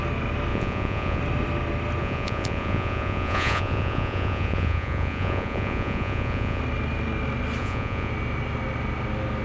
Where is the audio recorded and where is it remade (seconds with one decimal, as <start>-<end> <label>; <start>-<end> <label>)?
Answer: 0.0-0.5 recorded; 0.5-1.2 remade; 1.2-2.0 recorded; 2.0-6.6 remade; 6.6-7.6 recorded; 7.6-8.1 remade; 8.1-9.4 recorded